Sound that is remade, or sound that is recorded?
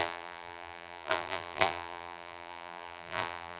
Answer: remade